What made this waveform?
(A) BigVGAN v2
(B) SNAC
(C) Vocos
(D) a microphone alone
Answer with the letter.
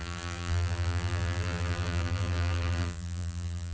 A